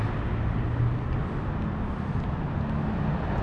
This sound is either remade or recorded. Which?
recorded